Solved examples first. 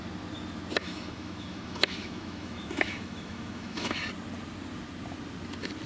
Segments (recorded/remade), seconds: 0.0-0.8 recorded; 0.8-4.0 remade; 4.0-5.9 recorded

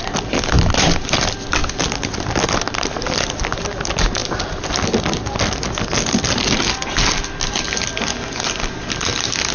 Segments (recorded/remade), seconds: 0.0-8.1 recorded; 8.1-8.9 remade; 8.9-9.5 recorded

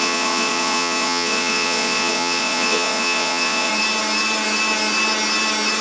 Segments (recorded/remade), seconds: 0.0-3.7 remade; 3.7-5.8 recorded

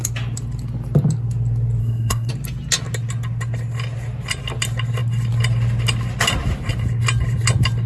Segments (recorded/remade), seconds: 0.0-1.8 recorded; 1.8-2.3 remade; 2.3-7.9 recorded